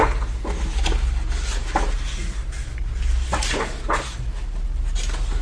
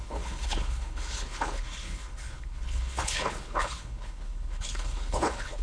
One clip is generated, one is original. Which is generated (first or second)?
second